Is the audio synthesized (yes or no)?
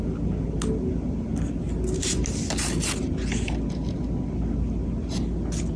no